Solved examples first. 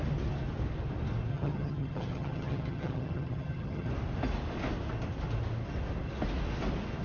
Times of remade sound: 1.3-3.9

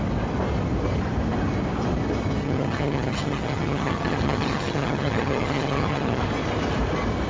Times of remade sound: 2.4-6.2

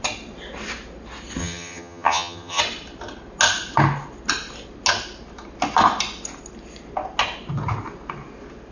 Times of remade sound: 1.4-2.6

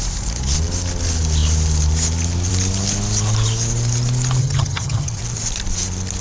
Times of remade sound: 4.4-5.2

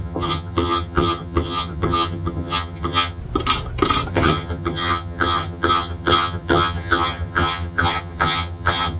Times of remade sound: 0.0-3.2; 4.1-9.0

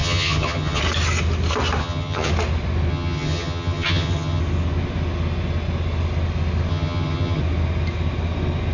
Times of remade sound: 0.0-0.8; 1.8-2.3; 2.9-4.4; 6.7-7.4